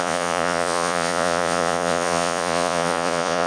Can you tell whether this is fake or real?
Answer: fake